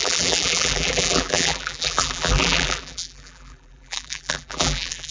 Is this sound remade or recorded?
remade